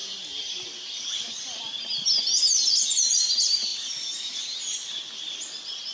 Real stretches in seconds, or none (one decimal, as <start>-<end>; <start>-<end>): 0.0-5.9